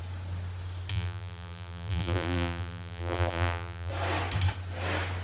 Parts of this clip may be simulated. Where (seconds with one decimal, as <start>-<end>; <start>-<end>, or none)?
0.9-3.9

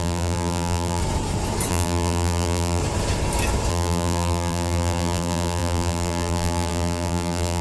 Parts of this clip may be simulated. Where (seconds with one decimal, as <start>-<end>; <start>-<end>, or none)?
0.0-1.0; 1.7-2.8; 3.7-7.6

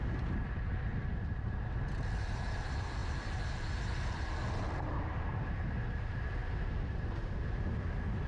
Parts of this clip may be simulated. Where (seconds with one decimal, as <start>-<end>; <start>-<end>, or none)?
0.9-1.6; 6.4-7.5

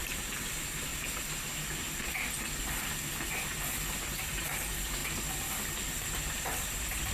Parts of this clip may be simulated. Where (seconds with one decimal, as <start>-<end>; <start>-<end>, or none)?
0.0-0.9; 4.1-5.0; 5.9-7.1

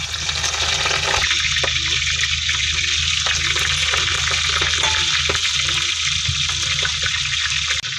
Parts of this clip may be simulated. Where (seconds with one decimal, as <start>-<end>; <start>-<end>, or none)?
none

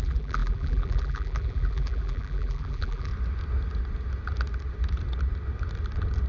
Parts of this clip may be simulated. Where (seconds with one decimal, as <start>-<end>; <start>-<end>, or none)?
0.0-3.1

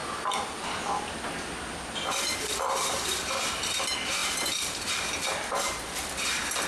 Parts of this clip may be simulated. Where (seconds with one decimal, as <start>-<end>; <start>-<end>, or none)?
0.0-1.0; 4.2-4.8

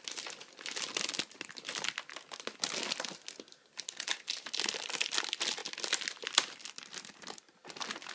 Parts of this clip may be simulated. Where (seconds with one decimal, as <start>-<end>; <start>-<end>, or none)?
none